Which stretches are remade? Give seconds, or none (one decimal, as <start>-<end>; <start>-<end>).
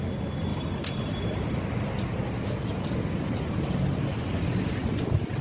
none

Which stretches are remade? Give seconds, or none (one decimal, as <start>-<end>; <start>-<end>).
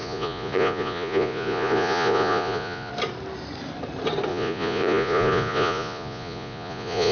0.0-2.9; 4.3-7.1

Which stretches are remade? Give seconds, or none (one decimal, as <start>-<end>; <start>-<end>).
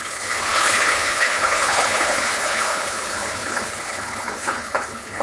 0.0-5.2